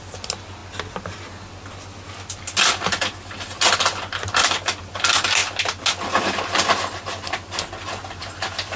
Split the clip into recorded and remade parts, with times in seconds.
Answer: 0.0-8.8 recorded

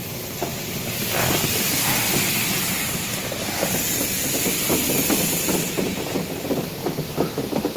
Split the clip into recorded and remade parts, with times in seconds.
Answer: 0.0-6.8 recorded; 6.8-7.3 remade; 7.3-7.8 recorded

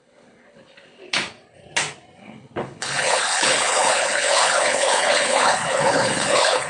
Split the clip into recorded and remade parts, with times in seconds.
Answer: 0.0-1.1 remade; 1.1-2.2 recorded; 2.2-6.7 remade